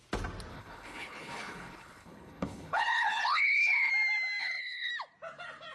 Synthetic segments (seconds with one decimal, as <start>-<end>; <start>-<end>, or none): 0.5-3.9; 4.4-4.9